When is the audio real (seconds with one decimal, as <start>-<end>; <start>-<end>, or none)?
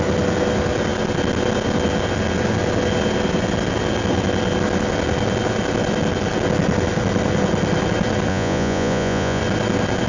0.0-8.3; 9.4-10.1